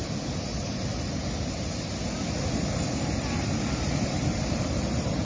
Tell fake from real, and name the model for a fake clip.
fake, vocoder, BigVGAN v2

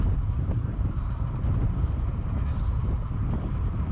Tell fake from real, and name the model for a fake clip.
real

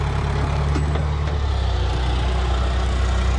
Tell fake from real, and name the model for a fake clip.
real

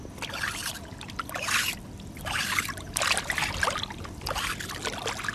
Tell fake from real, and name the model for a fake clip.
real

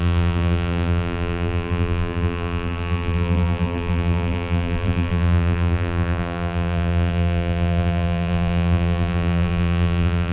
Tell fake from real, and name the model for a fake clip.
fake, vocoder, BigVGAN v2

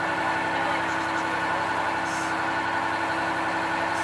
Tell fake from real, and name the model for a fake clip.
real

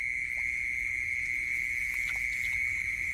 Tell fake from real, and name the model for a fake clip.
real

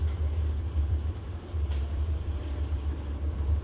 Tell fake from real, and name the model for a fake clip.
fake, vocoder, BigVGAN v2